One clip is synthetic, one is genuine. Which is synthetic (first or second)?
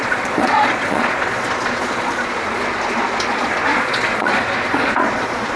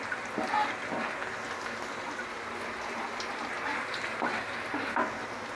first